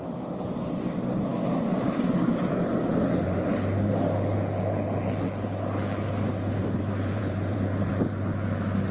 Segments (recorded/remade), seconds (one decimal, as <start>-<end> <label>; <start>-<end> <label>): 0.0-6.6 recorded; 6.6-7.9 remade; 7.9-8.9 recorded

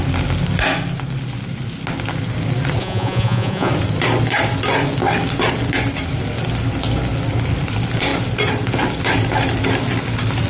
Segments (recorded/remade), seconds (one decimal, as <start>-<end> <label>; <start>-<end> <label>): 0.0-2.8 recorded; 2.8-3.7 remade; 3.7-10.5 recorded

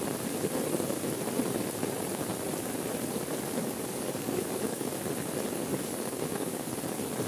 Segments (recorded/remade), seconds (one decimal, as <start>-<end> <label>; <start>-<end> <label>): 0.0-3.6 recorded; 3.6-5.0 remade; 5.0-5.7 recorded; 5.7-6.7 remade; 6.7-7.3 recorded

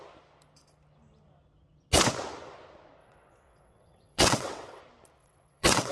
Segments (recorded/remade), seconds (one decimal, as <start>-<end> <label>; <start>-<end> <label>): 0.0-3.0 recorded; 3.0-4.8 remade; 4.8-5.2 recorded; 5.2-5.9 remade

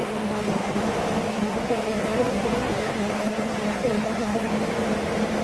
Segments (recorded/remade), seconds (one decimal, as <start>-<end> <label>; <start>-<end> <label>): 0.0-0.8 remade; 0.8-1.3 recorded; 1.3-4.5 remade; 4.5-5.4 recorded